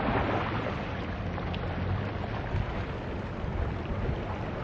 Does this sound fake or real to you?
real